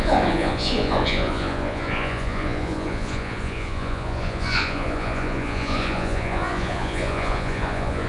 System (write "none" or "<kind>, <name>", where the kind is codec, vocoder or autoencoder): vocoder, Vocos